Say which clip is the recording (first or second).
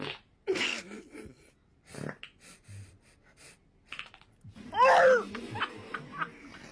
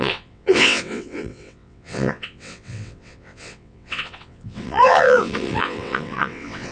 first